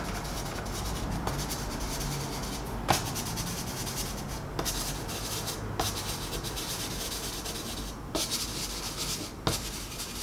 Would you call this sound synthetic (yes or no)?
no